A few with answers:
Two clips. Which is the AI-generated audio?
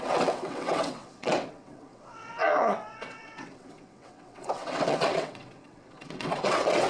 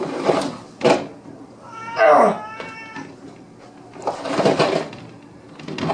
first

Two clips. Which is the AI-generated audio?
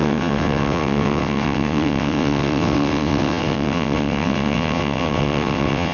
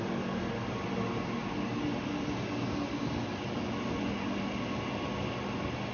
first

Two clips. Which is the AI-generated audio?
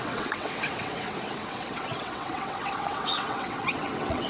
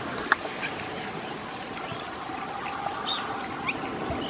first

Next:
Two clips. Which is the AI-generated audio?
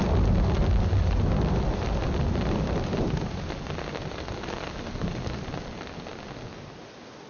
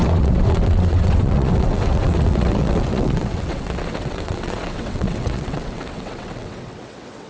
second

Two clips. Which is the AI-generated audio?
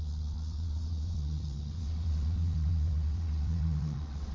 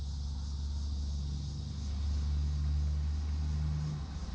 first